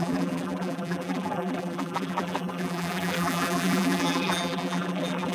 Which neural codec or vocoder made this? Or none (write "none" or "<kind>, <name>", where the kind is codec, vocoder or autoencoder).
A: vocoder, BigVGAN v2